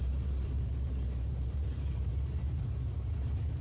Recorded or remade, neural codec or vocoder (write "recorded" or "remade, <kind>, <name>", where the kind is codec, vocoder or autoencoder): remade, vocoder, BigVGAN v2